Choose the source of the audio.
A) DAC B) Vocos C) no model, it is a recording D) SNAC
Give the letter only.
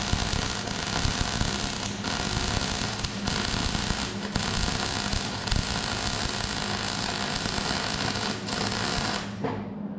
C